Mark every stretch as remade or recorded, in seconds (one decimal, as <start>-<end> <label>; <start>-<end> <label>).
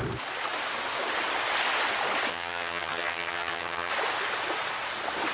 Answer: 0.0-2.3 recorded; 2.3-3.9 remade; 3.9-5.3 recorded